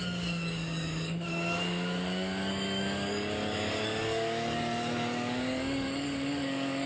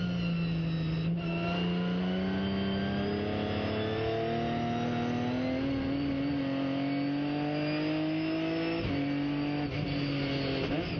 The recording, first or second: second